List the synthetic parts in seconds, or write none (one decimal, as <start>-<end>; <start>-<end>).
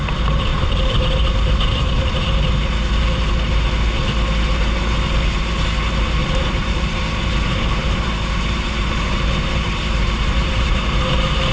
0.5-2.5; 6.2-11.5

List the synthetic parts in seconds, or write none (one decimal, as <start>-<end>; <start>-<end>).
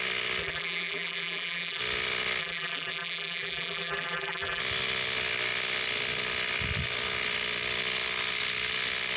0.4-1.8; 2.4-4.6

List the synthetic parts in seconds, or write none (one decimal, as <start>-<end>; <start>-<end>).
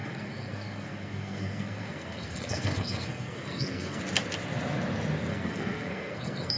0.0-4.0; 5.3-6.6